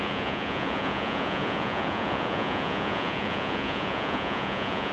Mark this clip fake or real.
fake